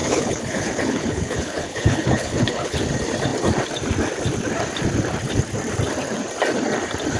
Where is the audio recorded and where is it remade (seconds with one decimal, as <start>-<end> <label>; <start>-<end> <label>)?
0.0-2.8 remade; 2.8-7.2 recorded